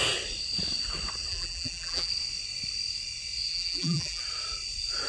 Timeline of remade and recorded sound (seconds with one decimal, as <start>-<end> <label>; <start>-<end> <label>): 0.0-1.3 recorded; 1.3-2.1 remade; 2.1-3.5 recorded; 3.5-4.2 remade; 4.2-5.1 recorded